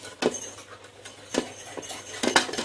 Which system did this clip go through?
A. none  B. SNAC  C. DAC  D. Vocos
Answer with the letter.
A